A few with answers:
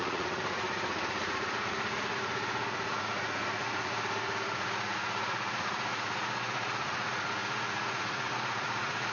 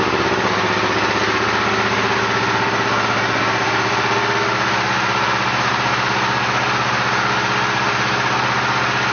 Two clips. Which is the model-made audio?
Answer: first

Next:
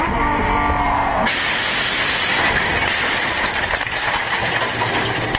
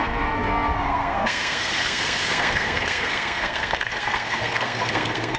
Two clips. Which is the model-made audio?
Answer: second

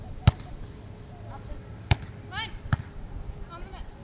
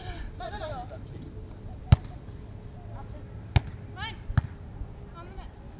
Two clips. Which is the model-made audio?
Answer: first